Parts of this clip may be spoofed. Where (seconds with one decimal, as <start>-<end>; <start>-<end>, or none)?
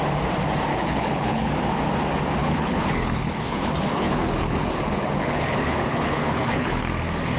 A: 0.7-1.5; 2.4-6.8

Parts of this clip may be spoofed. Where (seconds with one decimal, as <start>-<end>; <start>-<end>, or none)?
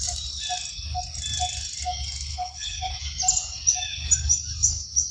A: 2.3-2.9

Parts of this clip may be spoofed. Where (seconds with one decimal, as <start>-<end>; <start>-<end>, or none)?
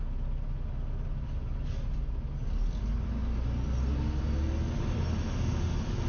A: none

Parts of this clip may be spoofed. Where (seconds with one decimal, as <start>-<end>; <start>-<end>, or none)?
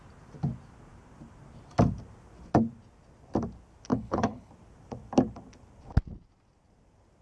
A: 3.9-4.5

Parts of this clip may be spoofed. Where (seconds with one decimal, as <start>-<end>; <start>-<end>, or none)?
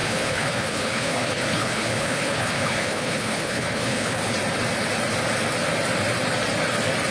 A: 0.0-4.3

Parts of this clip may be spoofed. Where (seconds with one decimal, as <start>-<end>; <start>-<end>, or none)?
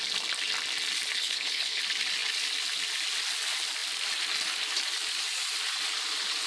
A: 1.2-1.8